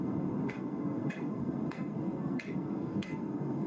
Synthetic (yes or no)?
yes